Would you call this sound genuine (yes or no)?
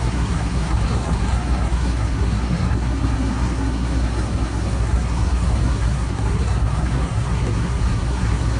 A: no